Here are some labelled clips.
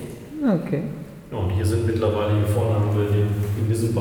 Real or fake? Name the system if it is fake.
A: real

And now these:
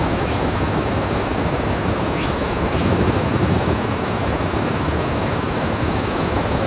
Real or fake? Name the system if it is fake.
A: fake, autoencoder, DAC-VAE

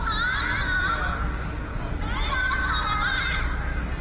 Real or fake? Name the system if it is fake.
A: real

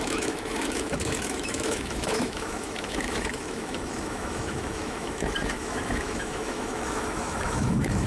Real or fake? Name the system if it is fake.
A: fake, autoencoder, DAC-VAE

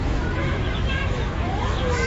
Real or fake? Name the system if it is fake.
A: fake, autoencoder, DAC-VAE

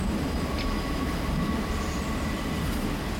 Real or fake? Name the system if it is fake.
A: real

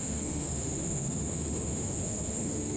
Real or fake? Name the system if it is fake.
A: fake, autoencoder, DAC-VAE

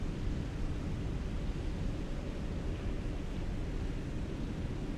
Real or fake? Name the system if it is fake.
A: real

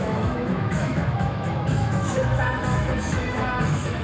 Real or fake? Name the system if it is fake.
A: fake, autoencoder, DAC-VAE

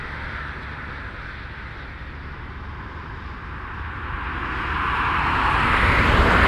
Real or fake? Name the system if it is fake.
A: real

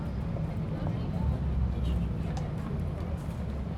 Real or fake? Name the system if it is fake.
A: real